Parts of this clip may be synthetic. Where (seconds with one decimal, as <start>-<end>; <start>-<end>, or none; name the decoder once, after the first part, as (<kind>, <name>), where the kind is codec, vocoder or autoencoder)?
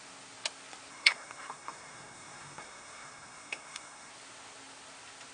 0.9-4.1 (codec, SNAC)